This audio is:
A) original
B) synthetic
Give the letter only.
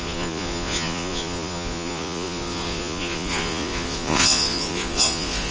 B